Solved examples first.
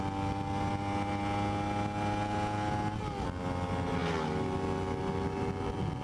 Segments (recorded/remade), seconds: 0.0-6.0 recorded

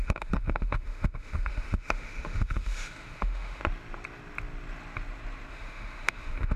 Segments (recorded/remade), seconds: 0.0-3.6 remade; 3.6-5.5 recorded; 5.5-6.6 remade

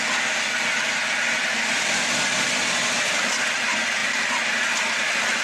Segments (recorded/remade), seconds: 0.0-5.4 recorded